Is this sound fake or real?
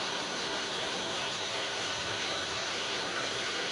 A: fake